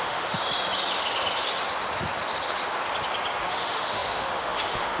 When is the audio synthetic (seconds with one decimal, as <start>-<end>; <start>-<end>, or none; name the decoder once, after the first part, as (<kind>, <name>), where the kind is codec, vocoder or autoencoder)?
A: 0.0-0.4 (autoencoder, DAC-VAE); 3.4-5.0